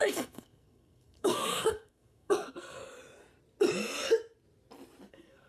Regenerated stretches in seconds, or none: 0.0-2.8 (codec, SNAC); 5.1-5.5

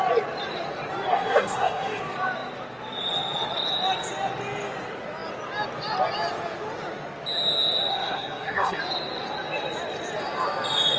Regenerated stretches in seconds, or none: 1.1-2.0 (codec, SNAC); 7.9-8.8

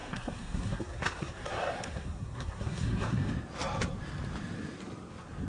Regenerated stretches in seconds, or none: 0.0-3.3 (codec, SNAC)

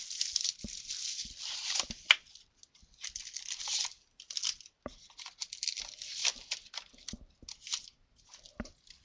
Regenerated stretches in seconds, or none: none

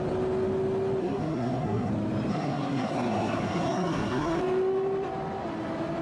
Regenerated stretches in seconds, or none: 1.0-1.9 (codec, SNAC); 2.3-4.4

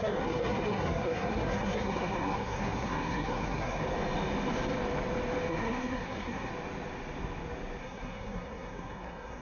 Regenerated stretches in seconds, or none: 0.0-3.8 (codec, SNAC); 5.5-6.5; 7.8-9.4

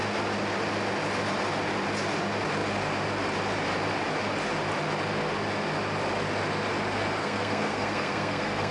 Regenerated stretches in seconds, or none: 7.2-8.7 (codec, SNAC)

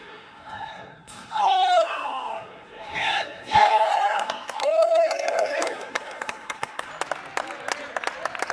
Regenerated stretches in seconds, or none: 0.0-6.9 (codec, SNAC)